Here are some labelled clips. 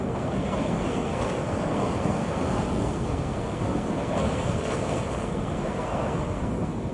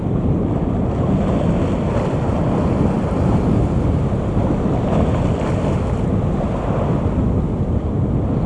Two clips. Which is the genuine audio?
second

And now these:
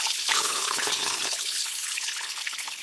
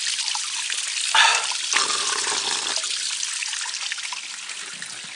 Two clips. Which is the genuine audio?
second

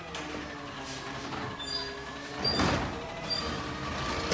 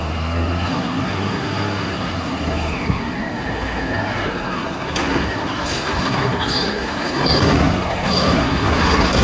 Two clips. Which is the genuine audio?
first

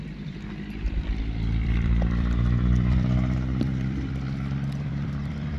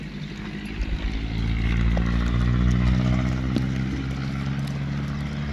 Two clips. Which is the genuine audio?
second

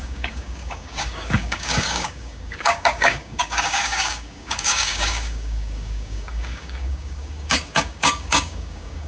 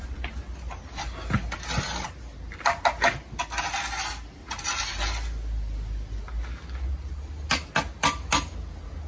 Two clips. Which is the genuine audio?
second